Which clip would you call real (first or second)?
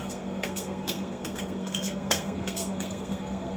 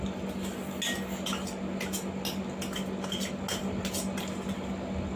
second